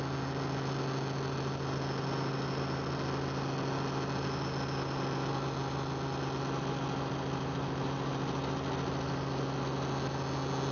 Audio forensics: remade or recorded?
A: recorded